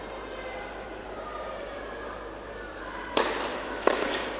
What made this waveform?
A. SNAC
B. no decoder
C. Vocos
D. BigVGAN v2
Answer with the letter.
D